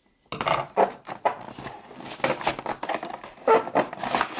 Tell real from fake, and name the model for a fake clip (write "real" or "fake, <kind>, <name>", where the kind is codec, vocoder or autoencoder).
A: real